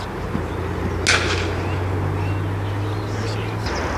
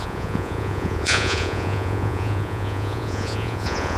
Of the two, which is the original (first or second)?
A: first